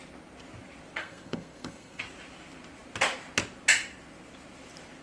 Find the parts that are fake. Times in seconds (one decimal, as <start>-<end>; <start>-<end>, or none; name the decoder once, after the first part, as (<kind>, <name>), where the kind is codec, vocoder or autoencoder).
1.0-2.0 (codec, SNAC)